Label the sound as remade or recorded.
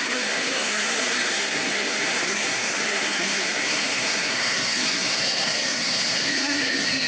remade